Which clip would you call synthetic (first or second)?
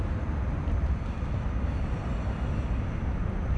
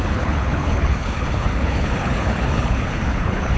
second